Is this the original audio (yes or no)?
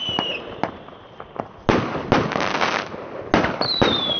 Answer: yes